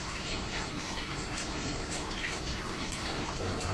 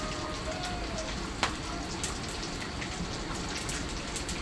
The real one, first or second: second